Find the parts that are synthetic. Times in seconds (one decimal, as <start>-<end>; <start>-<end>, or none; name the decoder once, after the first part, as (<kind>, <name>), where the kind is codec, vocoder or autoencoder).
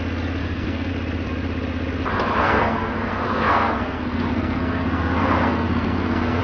0.4-0.9 (codec, SNAC); 2.4-6.4